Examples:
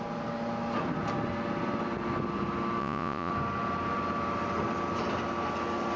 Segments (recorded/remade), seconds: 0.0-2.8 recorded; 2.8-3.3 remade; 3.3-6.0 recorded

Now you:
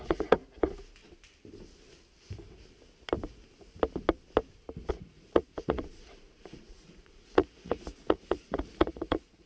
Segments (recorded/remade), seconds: 0.0-0.4 remade; 0.4-4.9 recorded; 4.9-9.5 remade

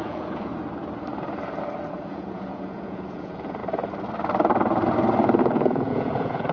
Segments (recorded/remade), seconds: 0.0-0.5 remade; 0.5-1.9 recorded; 1.9-3.6 remade; 3.6-5.4 recorded; 5.4-6.5 remade

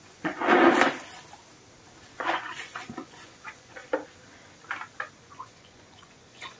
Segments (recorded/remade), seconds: 0.0-0.4 remade; 0.4-2.1 recorded; 2.1-3.8 remade; 3.8-5.2 recorded; 5.2-6.6 remade

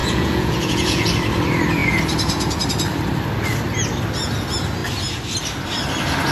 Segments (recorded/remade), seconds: 0.0-1.1 remade; 1.1-6.3 recorded